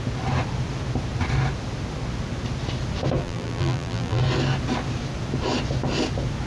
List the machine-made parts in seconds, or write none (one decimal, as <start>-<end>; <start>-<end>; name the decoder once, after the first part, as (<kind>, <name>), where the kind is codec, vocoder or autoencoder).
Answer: 3.2-4.2 (vocoder, BigVGAN v2)